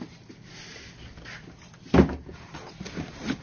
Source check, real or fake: real